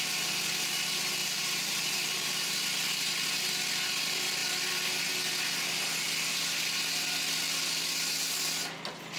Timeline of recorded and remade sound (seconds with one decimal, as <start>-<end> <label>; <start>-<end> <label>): 0.0-1.2 recorded; 1.2-2.5 remade; 2.5-9.2 recorded